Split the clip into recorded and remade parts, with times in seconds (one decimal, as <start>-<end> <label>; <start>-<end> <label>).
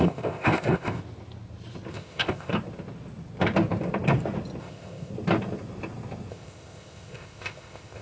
0.0-1.0 remade; 1.0-1.9 recorded; 1.9-2.5 remade; 2.5-4.6 recorded; 4.6-5.1 remade; 5.1-6.3 recorded; 6.3-8.0 remade